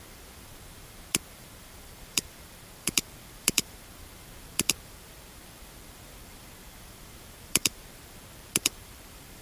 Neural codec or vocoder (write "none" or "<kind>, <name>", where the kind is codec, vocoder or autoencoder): vocoder, BigVGAN v2